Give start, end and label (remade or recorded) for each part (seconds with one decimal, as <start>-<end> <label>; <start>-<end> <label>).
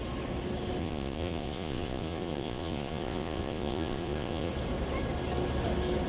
0.0-0.8 recorded; 0.8-4.5 remade; 4.5-6.1 recorded